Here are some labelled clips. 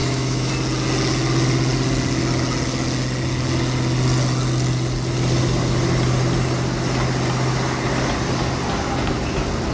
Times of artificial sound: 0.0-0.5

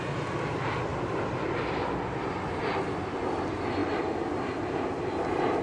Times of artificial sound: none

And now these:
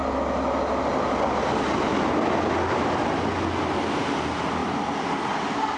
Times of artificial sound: 4.6-5.8

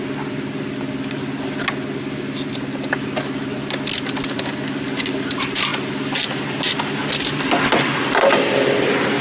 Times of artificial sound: none

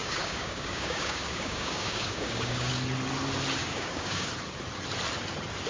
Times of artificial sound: 0.0-2.7; 3.6-4.3

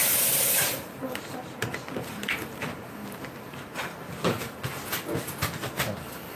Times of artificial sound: 0.0-3.2